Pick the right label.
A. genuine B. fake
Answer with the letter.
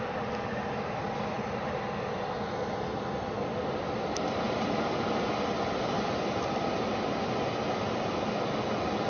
A